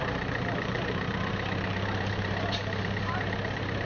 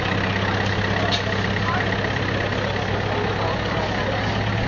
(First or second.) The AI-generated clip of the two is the first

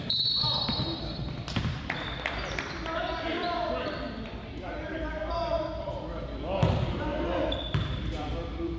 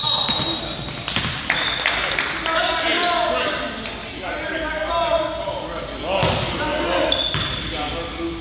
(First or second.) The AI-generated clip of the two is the first